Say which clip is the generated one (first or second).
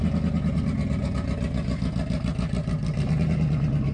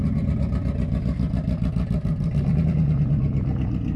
second